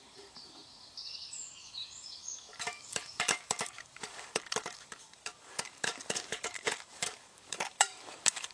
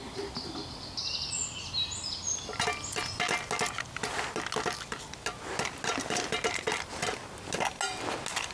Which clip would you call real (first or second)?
second